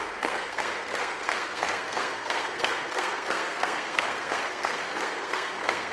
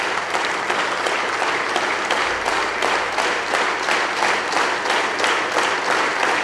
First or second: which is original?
second